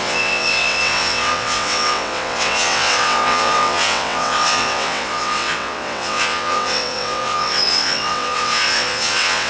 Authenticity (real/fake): fake